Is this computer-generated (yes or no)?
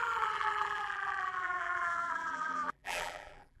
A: yes